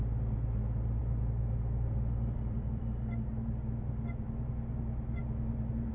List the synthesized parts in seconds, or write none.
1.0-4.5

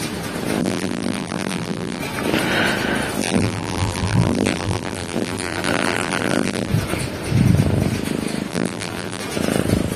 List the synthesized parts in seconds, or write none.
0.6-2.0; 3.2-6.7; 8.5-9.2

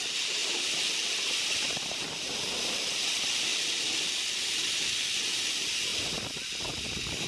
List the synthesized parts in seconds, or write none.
none

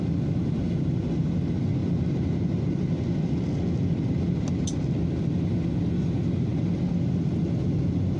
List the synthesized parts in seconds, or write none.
none

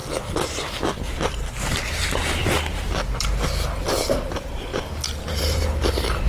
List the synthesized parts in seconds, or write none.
1.1-2.4; 4.0-4.7; 5.3-6.3